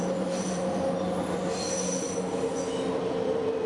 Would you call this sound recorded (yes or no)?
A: yes